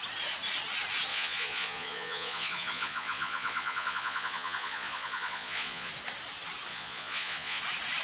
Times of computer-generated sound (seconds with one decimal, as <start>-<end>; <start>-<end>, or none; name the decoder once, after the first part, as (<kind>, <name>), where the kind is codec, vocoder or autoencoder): 1.1-5.9 (vocoder, Vocos); 6.7-7.6